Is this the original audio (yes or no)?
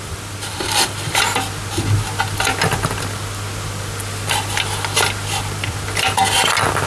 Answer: yes